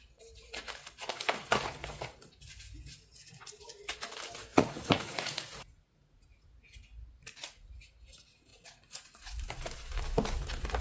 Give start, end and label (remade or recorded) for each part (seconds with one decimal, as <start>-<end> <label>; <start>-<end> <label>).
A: 0.0-4.5 recorded; 4.5-6.8 remade; 6.8-7.2 recorded; 7.2-7.7 remade; 7.7-8.5 recorded; 8.5-9.4 remade; 9.4-10.8 recorded